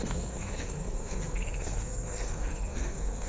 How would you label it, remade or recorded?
remade